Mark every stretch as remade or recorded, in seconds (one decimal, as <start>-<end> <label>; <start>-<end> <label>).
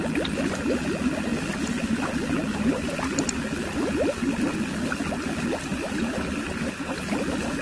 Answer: 0.0-5.7 recorded; 5.7-7.1 remade; 7.1-7.6 recorded